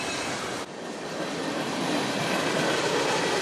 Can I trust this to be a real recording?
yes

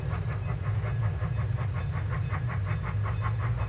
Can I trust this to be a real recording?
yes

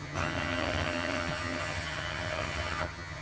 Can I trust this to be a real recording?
no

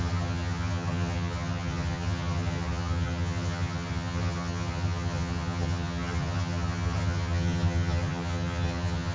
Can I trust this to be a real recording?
no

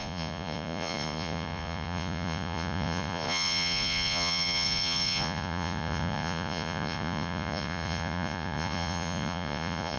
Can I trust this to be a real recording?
no